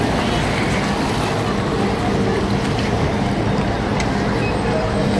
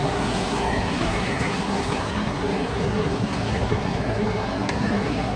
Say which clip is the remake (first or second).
second